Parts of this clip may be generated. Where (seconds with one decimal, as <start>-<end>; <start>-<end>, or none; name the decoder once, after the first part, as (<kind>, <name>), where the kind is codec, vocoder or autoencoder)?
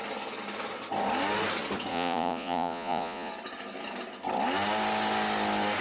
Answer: 1.9-3.3 (vocoder, Vocos)